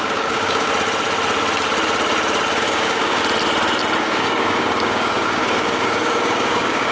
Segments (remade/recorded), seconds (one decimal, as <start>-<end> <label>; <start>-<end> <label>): 0.0-0.7 remade; 0.7-2.6 recorded; 2.6-3.2 remade; 3.2-4.0 recorded; 4.0-6.9 remade